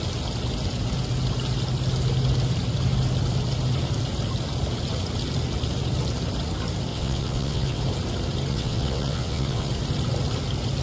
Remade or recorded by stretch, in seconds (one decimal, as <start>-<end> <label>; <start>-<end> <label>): 0.0-6.9 recorded; 6.9-7.8 remade; 7.8-8.5 recorded; 8.5-9.7 remade; 9.7-10.8 recorded